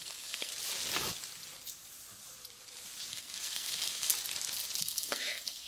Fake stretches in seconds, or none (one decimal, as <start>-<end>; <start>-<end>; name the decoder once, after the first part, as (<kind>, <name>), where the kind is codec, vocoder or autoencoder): 0.0-0.5 (codec, SNAC); 3.1-4.1; 4.8-5.7